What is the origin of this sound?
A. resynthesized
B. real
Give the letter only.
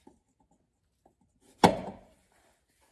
B